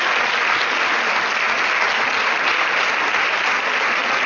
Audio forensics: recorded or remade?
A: recorded